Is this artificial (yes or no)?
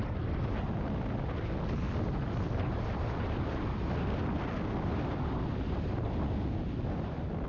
no